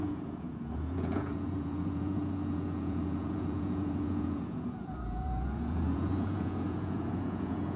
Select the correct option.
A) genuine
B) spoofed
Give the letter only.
B